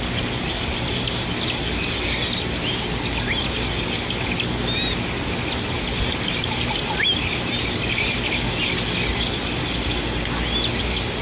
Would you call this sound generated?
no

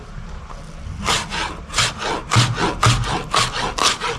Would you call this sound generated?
no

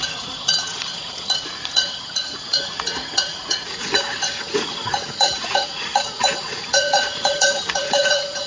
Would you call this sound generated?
yes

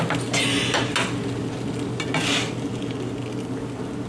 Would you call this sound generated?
no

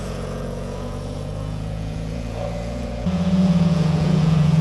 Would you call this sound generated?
yes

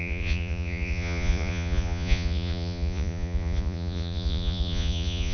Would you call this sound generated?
yes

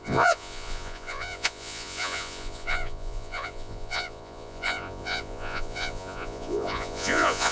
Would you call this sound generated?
yes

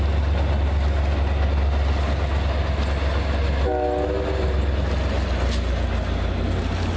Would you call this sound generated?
no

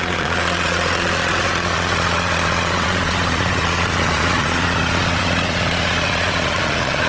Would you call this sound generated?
yes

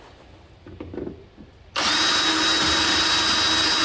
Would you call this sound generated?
no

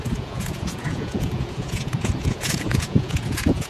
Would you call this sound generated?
yes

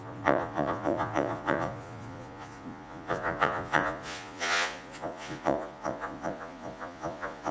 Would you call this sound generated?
yes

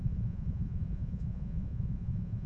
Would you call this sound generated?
yes